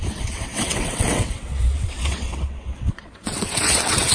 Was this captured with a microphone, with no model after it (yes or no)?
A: no